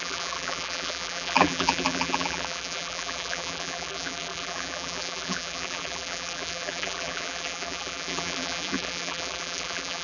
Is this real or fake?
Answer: fake